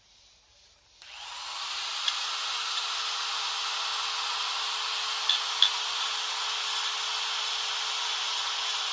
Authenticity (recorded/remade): recorded